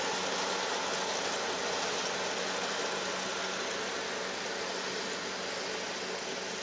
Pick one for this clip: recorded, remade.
recorded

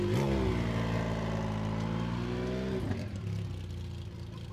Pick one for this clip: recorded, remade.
recorded